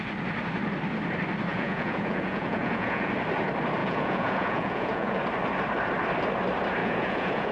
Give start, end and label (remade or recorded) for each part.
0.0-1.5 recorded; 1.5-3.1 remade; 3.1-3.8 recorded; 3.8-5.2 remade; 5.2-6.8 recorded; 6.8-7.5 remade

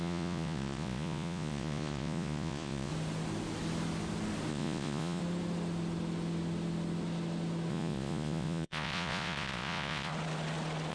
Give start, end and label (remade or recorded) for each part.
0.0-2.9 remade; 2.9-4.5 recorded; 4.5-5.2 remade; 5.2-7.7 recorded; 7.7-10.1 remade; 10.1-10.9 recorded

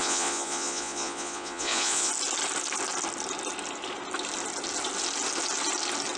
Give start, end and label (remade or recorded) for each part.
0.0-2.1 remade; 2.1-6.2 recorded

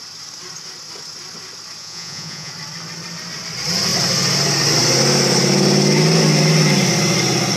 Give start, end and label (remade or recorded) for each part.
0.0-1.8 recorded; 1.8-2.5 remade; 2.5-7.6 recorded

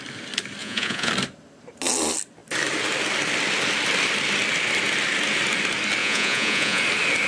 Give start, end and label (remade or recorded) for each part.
0.0-0.6 recorded; 0.6-1.1 remade; 1.1-6.0 recorded; 6.0-6.8 remade; 6.8-7.3 recorded

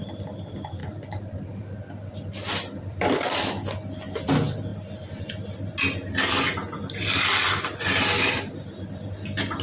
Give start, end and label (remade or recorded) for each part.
0.0-9.6 recorded